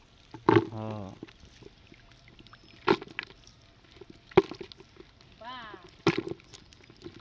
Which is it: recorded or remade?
recorded